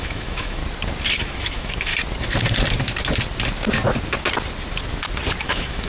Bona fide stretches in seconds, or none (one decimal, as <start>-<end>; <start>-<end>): 0.6-1.2; 1.9-5.4